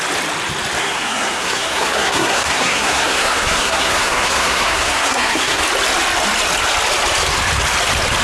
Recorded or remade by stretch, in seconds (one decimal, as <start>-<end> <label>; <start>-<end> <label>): 0.0-0.8 recorded; 0.8-5.6 remade; 5.6-8.2 recorded